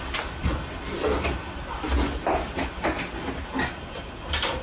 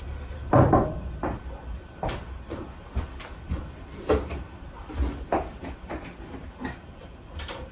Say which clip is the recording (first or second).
first